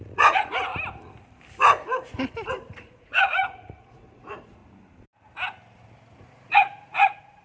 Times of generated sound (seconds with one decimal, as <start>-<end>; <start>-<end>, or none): 0.0-0.7; 2.5-4.6; 6.2-7.4